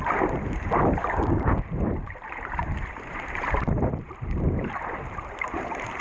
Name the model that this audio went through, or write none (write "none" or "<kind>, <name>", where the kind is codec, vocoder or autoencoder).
vocoder, BigVGAN v2